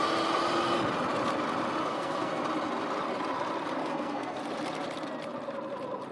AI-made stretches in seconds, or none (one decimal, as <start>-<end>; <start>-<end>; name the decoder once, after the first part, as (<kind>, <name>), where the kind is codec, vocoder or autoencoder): 1.8-2.4 (codec, SNAC); 3.8-4.4

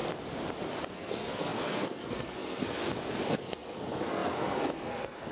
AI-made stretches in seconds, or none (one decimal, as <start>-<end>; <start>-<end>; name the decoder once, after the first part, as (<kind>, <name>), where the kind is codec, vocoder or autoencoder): 0.9-2.8 (codec, SNAC); 3.3-5.3